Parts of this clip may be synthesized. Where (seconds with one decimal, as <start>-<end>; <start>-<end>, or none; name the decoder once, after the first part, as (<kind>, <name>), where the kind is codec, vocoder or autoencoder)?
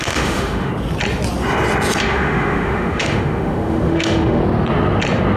0.0-0.7 (autoencoder, DAC-VAE); 2.0-4.4